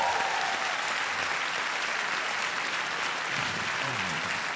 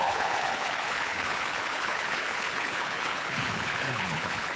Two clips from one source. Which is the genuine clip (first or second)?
first